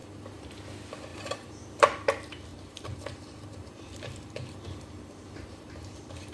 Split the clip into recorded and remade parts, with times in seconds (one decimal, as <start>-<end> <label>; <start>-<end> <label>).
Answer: 0.0-0.5 remade; 0.5-1.1 recorded; 1.1-1.6 remade; 1.6-2.5 recorded; 2.5-6.3 remade